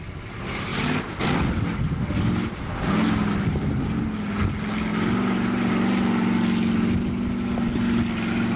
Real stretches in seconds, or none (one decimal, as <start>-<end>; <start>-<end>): 0.0-8.6